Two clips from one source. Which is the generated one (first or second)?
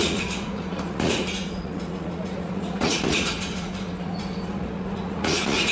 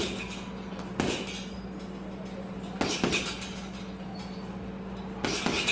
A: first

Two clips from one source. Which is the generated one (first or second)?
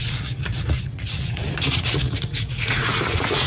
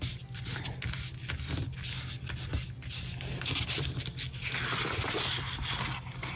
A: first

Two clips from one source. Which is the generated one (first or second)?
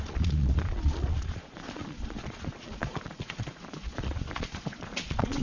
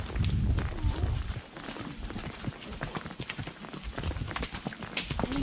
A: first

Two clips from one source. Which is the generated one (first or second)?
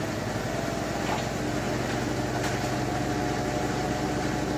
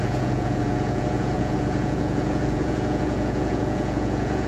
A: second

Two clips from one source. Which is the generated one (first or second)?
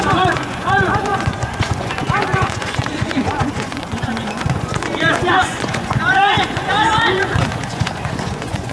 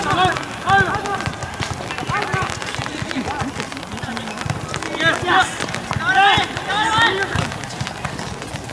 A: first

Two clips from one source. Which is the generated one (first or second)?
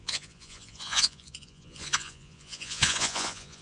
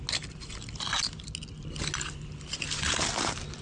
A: first